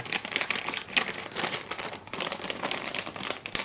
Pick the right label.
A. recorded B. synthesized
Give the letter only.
A